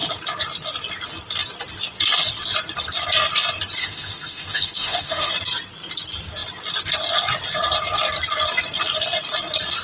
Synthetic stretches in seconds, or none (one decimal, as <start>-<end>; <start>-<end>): 3.8-5.3